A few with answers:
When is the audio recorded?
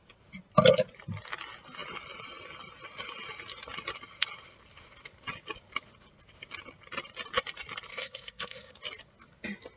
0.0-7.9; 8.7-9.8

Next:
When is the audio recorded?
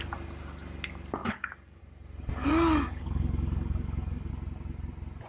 0.0-1.2; 1.8-2.4; 4.3-5.3